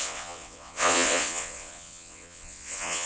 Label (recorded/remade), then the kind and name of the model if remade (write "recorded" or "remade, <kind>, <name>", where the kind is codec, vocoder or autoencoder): remade, vocoder, WaveNeXt